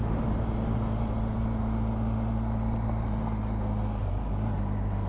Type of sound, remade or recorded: recorded